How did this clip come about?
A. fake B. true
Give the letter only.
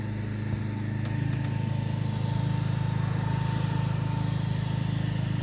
B